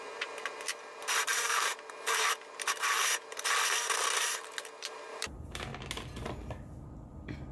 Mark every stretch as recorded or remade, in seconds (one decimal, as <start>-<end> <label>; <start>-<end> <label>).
0.0-1.7 remade; 1.7-4.9 recorded; 4.9-5.7 remade; 5.7-6.8 recorded; 6.8-7.5 remade